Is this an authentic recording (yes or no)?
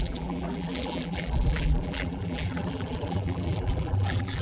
no